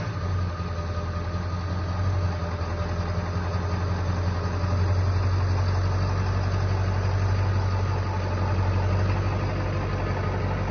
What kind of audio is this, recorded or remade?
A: recorded